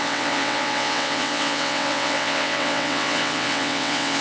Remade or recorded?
remade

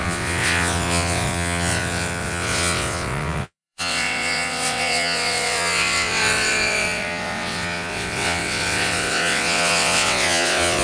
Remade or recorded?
remade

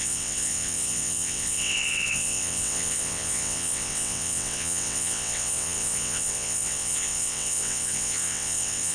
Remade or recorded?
remade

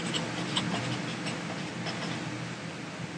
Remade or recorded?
recorded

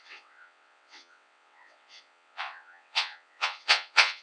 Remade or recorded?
remade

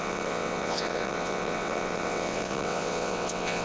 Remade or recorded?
remade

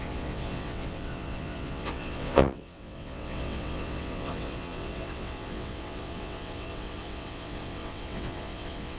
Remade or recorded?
remade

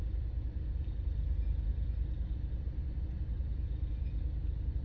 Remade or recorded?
recorded